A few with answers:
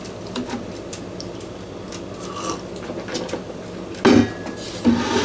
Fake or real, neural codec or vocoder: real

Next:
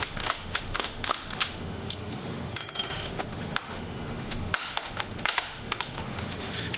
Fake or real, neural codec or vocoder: fake, autoencoder, DAC-VAE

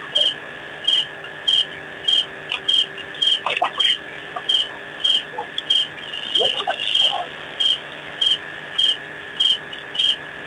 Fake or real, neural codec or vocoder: real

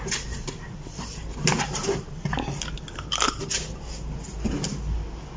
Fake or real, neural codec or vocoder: real